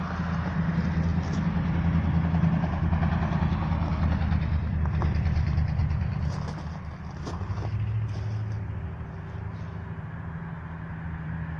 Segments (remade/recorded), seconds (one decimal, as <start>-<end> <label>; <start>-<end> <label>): 0.0-11.6 recorded